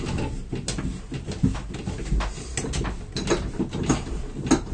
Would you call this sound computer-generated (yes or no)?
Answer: no